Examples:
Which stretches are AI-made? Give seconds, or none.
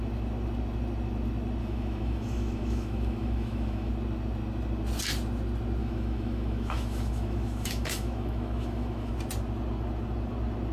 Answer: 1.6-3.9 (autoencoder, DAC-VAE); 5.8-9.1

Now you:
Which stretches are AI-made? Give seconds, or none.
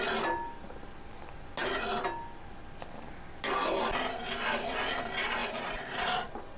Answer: 5.4-6.1 (vocoder, BigVGAN v2)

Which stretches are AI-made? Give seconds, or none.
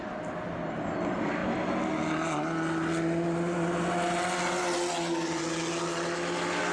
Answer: none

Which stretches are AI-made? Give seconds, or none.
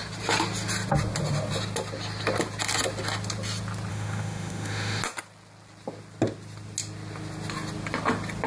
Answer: 3.9-5.0 (autoencoder, DAC-VAE)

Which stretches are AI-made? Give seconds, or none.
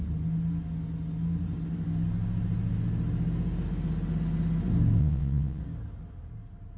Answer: 5.0-5.6 (vocoder, WaveNeXt)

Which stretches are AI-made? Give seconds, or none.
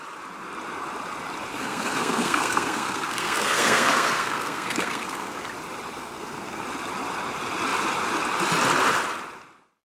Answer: 1.5-5.5 (codec, SNAC); 6.0-6.6